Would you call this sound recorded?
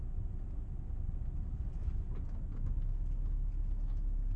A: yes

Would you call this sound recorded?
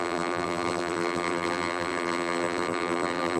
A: no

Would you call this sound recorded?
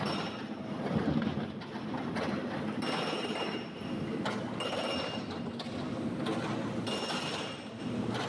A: yes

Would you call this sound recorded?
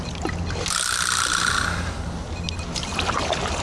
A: yes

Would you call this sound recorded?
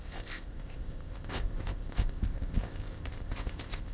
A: no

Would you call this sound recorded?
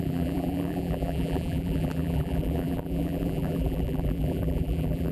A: no